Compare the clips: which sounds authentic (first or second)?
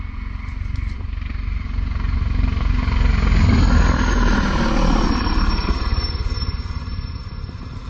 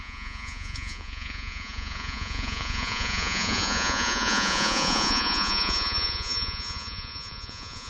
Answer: first